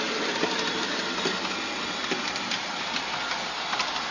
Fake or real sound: real